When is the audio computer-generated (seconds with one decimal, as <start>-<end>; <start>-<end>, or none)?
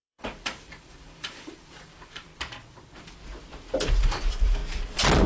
0.0-2.3; 4.0-4.6